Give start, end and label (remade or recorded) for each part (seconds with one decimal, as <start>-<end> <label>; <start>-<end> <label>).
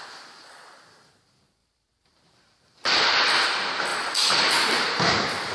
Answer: 0.0-1.6 recorded; 1.6-3.1 remade; 3.1-3.9 recorded; 3.9-4.5 remade; 4.5-5.5 recorded